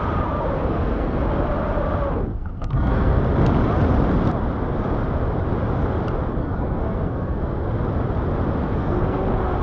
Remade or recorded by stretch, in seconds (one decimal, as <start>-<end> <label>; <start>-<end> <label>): 0.0-0.6 recorded; 0.6-1.2 remade; 1.2-2.3 recorded; 2.3-3.2 remade; 3.2-6.4 recorded; 6.4-7.7 remade; 7.7-8.6 recorded; 8.6-9.2 remade; 9.2-9.6 recorded